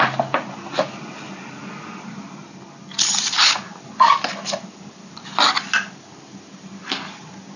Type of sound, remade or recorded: recorded